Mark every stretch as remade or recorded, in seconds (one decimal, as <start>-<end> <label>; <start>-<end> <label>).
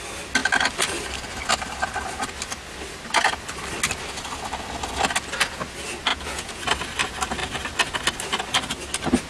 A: 0.0-6.1 recorded; 6.1-6.6 remade; 6.6-9.3 recorded